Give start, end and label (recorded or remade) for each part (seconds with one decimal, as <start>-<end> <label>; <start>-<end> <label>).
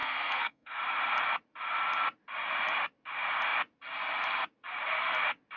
0.0-0.8 remade; 0.8-5.6 recorded